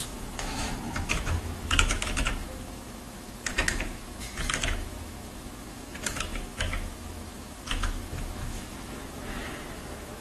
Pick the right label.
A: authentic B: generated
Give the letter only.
B